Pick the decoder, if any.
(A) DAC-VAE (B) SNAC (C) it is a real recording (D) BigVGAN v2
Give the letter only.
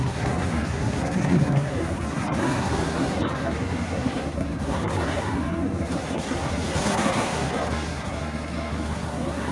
B